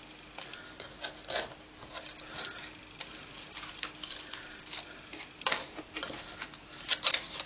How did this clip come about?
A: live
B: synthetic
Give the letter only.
A